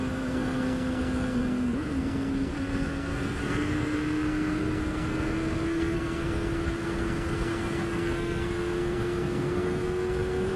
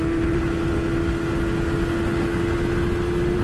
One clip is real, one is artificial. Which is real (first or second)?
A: second